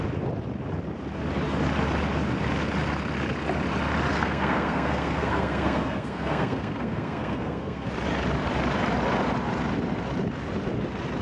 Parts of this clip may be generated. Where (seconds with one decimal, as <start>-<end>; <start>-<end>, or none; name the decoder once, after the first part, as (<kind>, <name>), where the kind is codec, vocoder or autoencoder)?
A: 4.1-7.9 (codec, SNAC)